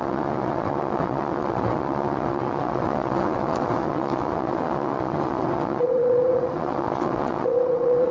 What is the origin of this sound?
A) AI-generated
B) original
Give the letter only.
A